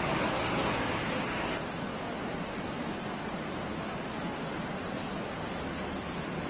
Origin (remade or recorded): recorded